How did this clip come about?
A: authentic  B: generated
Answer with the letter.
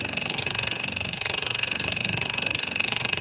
B